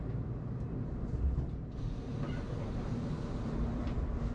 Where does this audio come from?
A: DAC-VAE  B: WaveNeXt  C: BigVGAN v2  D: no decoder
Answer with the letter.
D